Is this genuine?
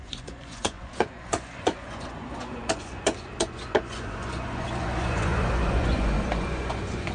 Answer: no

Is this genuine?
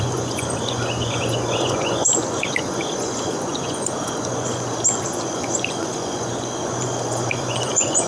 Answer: no